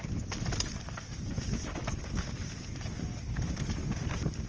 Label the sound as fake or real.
real